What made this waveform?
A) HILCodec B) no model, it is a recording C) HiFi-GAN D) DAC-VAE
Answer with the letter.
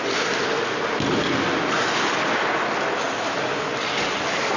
B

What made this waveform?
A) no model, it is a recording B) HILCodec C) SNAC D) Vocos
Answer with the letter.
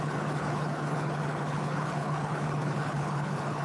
B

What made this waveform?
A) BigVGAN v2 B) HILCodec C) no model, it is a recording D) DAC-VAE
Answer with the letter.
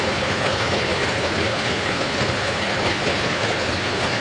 B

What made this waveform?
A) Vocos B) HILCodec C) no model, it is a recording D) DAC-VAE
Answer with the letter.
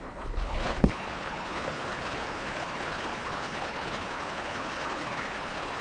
B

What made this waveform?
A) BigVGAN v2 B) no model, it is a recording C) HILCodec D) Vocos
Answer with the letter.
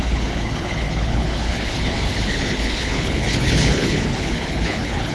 C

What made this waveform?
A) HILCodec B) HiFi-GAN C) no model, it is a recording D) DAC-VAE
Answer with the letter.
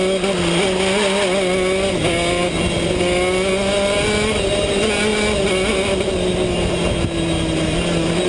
C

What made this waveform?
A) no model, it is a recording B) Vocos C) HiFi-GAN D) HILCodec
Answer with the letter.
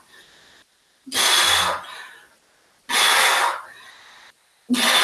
A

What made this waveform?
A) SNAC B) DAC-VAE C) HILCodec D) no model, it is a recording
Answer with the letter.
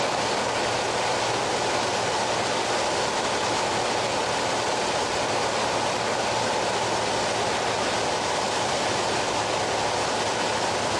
D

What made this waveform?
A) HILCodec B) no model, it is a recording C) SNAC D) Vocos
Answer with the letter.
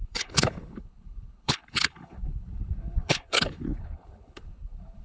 A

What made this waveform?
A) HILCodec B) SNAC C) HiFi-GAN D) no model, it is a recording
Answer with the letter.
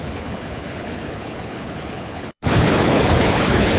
A